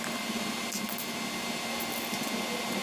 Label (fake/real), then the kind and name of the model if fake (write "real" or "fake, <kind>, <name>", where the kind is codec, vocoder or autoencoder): real